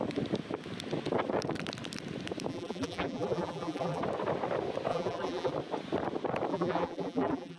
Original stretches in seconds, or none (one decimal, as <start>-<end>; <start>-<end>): 0.0-2.5; 4.0-4.9; 5.5-6.5